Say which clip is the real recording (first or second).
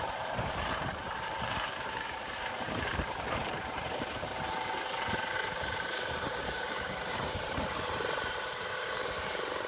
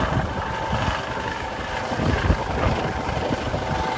second